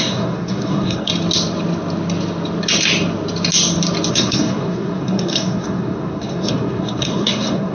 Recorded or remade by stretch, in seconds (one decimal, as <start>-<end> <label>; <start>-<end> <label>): 0.0-1.1 remade; 1.1-4.1 recorded; 4.1-7.7 remade

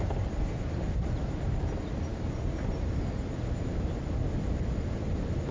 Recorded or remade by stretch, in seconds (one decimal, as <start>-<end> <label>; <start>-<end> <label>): 0.0-5.5 recorded